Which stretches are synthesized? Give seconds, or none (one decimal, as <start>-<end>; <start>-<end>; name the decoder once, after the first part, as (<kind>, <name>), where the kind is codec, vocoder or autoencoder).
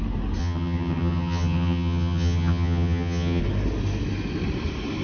0.4-3.4 (vocoder, HiFi-GAN)